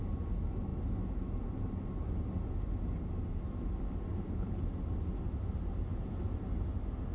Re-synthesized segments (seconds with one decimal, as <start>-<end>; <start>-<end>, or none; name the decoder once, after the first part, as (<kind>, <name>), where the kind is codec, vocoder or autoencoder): 4.1-4.6 (codec, HILCodec)